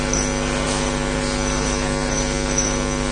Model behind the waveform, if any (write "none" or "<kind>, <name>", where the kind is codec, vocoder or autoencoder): none